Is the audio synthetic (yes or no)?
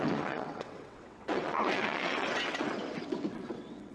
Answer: yes